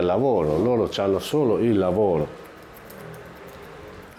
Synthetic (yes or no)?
no